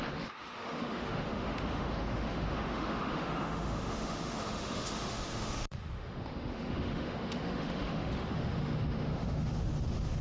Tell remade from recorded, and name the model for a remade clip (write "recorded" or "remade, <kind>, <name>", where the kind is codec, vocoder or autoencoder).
remade, autoencoder, DAC-VAE